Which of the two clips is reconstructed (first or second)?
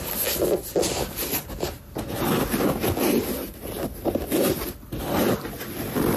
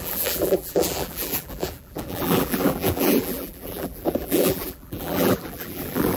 second